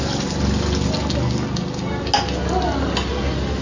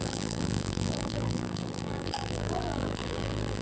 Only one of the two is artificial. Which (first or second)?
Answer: second